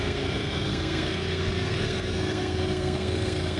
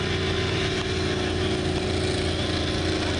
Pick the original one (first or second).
second